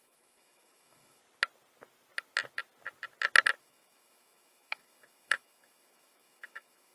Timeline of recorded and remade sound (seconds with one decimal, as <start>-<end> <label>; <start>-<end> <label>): 0.0-1.2 remade; 1.2-3.6 recorded; 3.6-6.9 remade